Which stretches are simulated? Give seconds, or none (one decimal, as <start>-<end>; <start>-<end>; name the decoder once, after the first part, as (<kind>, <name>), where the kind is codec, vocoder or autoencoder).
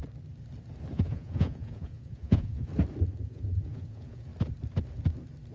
0.9-2.7 (vocoder, Vocos); 3.2-4.3